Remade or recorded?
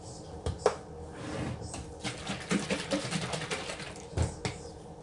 recorded